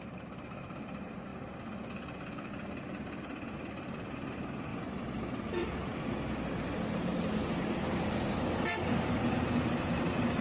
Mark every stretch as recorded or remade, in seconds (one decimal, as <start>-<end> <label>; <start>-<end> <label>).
0.0-4.7 remade; 4.7-5.3 recorded; 5.3-5.9 remade; 5.9-6.5 recorded; 6.5-7.1 remade; 7.1-9.3 recorded; 9.3-10.4 remade